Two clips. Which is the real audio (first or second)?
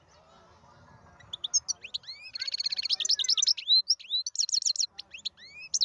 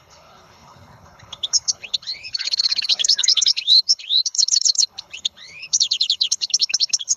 first